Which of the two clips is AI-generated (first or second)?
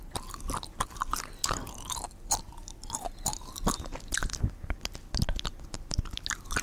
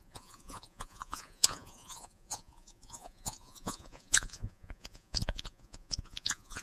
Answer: second